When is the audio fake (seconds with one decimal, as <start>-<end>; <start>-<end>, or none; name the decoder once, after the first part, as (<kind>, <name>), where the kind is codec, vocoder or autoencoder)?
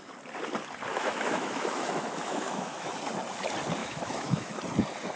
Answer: 0.9-2.9 (autoencoder, DAC-VAE); 3.8-4.6